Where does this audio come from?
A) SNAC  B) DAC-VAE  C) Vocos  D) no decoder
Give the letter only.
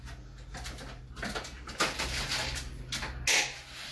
D